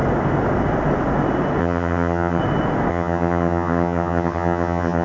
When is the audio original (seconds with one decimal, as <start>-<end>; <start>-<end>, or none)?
0.0-1.6; 2.4-2.9

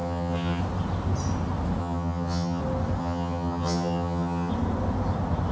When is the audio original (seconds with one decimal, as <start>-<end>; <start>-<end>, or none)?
0.6-1.8; 2.6-3.0; 4.5-5.5

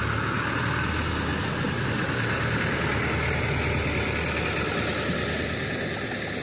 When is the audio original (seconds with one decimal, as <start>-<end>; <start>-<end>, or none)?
0.0-6.4

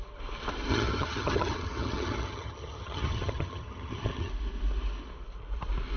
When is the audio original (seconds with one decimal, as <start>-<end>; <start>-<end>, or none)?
0.0-0.7; 4.3-6.0

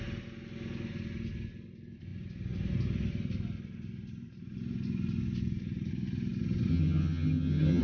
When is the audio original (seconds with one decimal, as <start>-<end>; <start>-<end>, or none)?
0.0-6.7

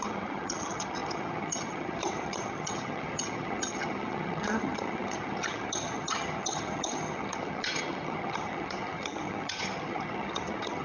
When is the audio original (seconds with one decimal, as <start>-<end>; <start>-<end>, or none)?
none

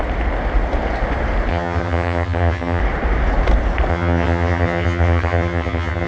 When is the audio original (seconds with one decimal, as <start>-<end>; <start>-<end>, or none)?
0.0-1.5; 2.8-3.9

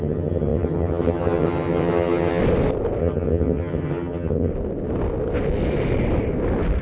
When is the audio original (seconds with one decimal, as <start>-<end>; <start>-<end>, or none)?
2.4-3.0; 4.5-6.8